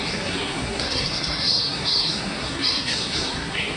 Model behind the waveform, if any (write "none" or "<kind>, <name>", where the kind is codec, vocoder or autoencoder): codec, SNAC